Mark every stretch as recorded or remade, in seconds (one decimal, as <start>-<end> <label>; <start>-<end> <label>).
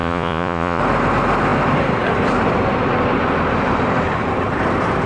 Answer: 0.0-0.8 remade; 0.8-5.1 recorded